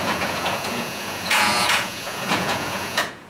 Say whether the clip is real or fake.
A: fake